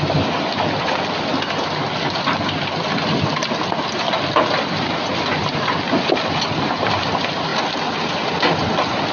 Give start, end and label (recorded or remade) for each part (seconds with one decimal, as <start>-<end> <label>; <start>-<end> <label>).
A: 0.0-9.1 recorded

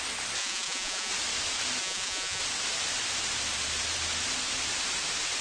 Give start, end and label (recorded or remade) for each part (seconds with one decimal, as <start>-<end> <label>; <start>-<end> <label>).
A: 0.0-0.4 recorded; 0.4-1.1 remade; 1.1-1.8 recorded; 1.8-2.4 remade; 2.4-5.4 recorded

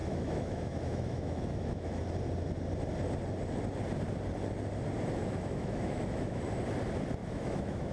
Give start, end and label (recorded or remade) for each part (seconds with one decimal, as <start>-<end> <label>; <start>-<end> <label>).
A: 0.0-2.0 remade; 2.0-5.2 recorded; 5.2-6.4 remade; 6.4-7.2 recorded; 7.2-7.9 remade

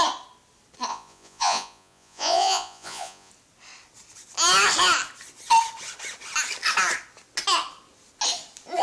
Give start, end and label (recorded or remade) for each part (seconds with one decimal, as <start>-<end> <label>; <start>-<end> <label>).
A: 0.0-0.9 recorded; 0.9-3.3 remade; 3.3-8.8 recorded